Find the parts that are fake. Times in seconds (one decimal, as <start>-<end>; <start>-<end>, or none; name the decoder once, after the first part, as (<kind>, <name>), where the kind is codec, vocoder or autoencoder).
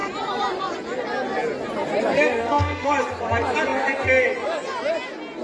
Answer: 2.4-2.9 (codec, SNAC)